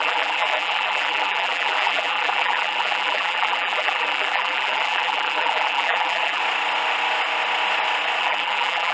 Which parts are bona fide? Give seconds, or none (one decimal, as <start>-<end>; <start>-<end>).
6.4-8.2